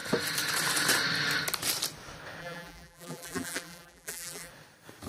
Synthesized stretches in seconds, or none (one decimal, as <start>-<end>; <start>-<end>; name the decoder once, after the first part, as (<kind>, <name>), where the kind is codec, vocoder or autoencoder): 2.4-4.5 (vocoder, BigVGAN v2)